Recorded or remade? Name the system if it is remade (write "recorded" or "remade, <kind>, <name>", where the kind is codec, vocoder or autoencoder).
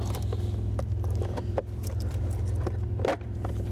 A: remade, vocoder, BigVGAN v2